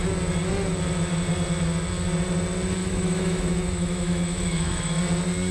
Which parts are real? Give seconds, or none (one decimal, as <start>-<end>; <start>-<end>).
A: 0.0-2.8; 5.0-5.5